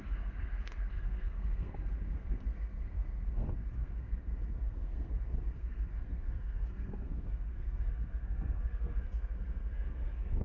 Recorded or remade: remade